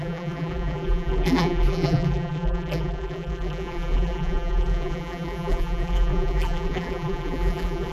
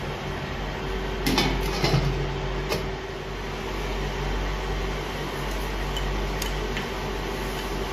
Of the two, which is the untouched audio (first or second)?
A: second